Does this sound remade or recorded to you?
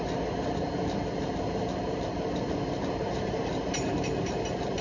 recorded